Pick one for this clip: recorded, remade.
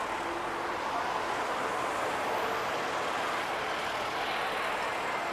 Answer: recorded